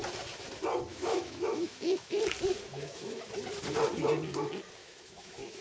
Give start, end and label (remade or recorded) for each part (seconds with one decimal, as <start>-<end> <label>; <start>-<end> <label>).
0.0-0.9 recorded; 0.9-2.2 remade; 2.2-2.7 recorded; 2.7-3.3 remade; 3.3-4.8 recorded; 4.8-5.6 remade